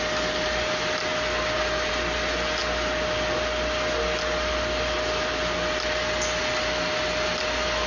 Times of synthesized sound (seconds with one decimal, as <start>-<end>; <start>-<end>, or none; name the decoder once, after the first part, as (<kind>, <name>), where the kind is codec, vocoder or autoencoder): none